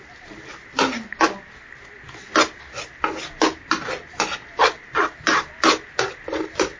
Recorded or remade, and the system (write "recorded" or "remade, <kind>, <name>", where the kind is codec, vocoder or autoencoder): recorded